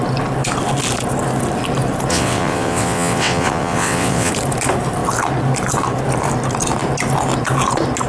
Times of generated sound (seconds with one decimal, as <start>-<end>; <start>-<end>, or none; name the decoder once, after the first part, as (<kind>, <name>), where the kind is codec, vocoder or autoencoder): 2.1-4.3 (vocoder, WaveNeXt)